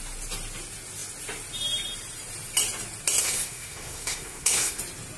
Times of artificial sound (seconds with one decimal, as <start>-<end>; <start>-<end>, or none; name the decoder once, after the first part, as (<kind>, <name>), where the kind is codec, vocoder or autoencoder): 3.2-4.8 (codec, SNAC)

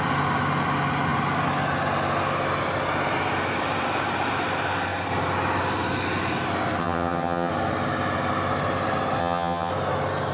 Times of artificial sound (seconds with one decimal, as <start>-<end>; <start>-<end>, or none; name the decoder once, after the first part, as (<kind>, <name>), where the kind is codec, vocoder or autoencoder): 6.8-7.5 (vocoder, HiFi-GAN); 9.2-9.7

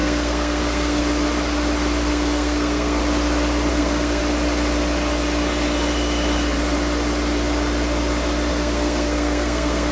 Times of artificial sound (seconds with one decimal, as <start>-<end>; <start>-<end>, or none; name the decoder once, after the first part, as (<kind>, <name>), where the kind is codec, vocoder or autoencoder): 0.0-1.0 (codec, SNAC); 2.1-3.0; 3.7-4.2; 8.5-9.9

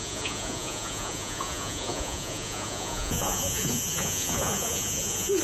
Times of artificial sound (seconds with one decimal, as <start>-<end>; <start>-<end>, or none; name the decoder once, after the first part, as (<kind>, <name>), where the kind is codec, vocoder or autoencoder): 0.0-5.4 (vocoder, Vocos)

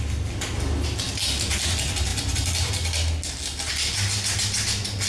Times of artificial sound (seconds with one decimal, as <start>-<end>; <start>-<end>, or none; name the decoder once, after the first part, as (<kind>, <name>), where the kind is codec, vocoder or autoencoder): none

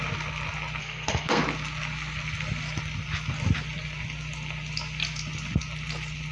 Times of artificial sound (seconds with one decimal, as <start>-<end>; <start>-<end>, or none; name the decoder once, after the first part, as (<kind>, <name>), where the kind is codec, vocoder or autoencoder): 0.8-1.4 (codec, SNAC)

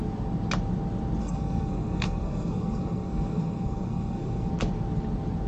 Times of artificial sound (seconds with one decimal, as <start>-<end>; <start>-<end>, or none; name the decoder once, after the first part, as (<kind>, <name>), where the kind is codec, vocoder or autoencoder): 1.2-4.5 (codec, SNAC)